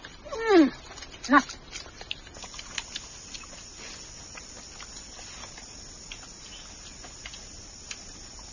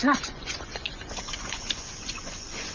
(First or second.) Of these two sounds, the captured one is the first